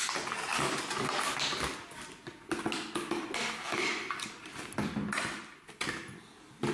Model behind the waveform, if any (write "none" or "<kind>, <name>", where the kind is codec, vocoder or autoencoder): none